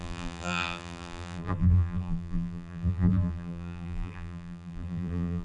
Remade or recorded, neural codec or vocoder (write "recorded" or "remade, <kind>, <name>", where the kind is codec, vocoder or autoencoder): remade, vocoder, BigVGAN v2